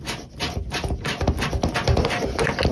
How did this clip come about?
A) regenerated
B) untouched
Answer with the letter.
B